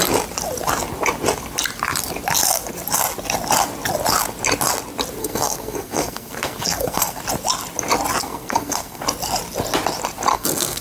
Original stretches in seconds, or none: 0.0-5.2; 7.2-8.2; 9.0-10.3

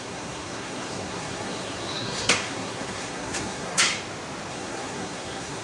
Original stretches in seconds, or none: 3.9-4.5